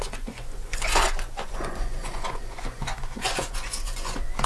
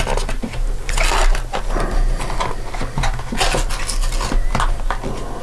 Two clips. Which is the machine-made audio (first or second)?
first